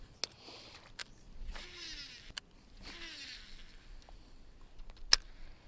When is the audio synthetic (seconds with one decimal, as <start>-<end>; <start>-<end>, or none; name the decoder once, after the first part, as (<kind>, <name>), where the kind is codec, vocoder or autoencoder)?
none